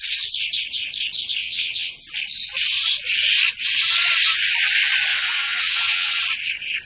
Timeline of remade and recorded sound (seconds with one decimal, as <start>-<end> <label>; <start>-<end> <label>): 0.0-1.4 recorded; 1.4-1.9 remade; 1.9-5.1 recorded; 5.1-6.2 remade; 6.2-6.8 recorded